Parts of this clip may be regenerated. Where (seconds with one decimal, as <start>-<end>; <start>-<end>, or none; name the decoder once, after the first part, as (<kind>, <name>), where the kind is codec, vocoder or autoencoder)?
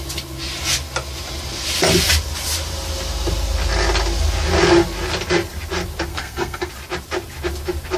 6.1-6.7 (codec, SNAC)